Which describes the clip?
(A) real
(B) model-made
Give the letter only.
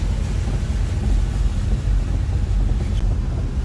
A